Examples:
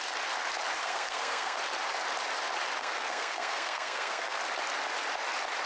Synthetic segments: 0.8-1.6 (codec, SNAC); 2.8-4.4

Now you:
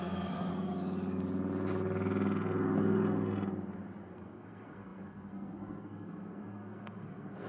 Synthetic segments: 0.0-0.5 (codec, SNAC); 4.1-7.5